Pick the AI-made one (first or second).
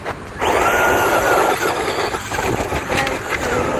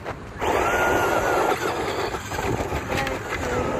first